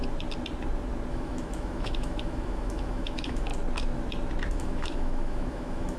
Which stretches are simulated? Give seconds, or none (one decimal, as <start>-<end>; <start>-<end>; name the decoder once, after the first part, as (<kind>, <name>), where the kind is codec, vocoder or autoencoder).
1.1-3.5 (autoencoder, DAC-VAE); 4.5-6.0